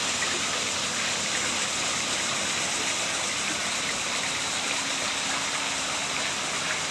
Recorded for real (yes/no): no